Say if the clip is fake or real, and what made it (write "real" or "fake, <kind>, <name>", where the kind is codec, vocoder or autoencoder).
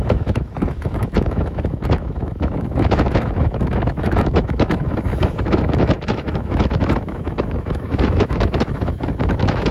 fake, autoencoder, DAC-VAE